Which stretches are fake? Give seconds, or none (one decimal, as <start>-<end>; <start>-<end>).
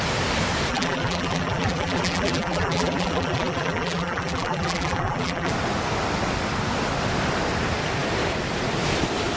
0.7-5.5